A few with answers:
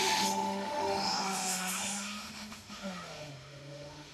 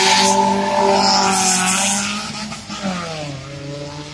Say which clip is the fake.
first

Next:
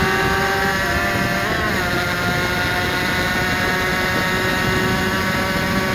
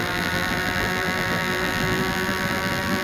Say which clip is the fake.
second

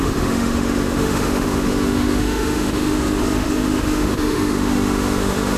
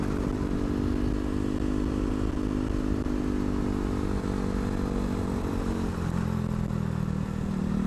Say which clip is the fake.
first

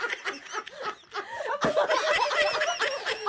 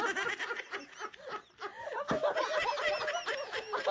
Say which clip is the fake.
first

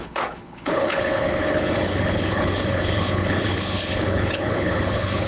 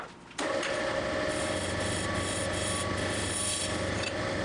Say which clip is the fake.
first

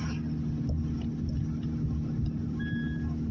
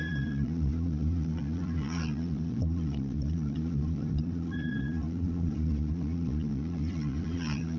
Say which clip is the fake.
second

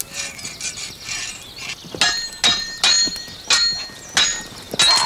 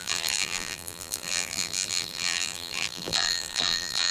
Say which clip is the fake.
second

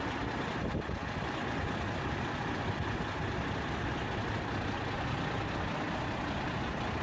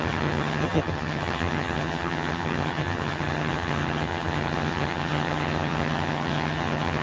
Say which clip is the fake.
second